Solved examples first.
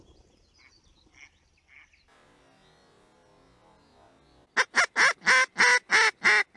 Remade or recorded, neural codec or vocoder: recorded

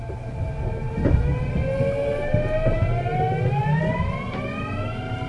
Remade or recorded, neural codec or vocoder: recorded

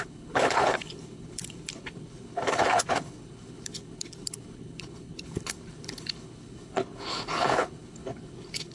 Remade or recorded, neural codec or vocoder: remade, codec, HILCodec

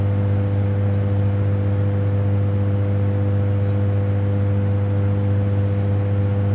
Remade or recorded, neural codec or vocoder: recorded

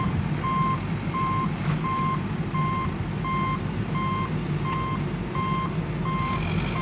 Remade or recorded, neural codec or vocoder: recorded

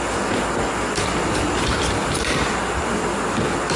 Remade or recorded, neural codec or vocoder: recorded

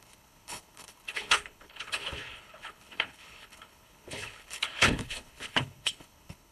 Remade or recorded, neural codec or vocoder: remade, codec, HILCodec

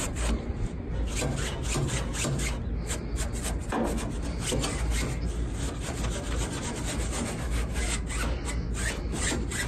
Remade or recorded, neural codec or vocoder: recorded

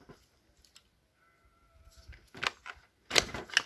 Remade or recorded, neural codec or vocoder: recorded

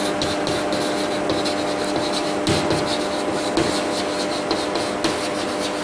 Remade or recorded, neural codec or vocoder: recorded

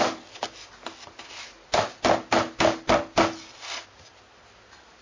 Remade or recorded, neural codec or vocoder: recorded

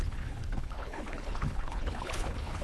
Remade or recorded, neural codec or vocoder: remade, codec, HILCodec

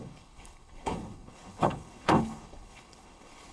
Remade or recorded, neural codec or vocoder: remade, codec, HILCodec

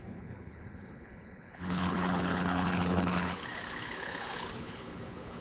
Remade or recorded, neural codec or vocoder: remade, codec, HILCodec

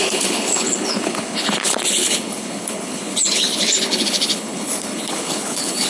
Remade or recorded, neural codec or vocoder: remade, codec, HILCodec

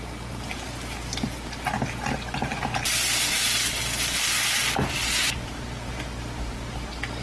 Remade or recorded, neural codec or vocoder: recorded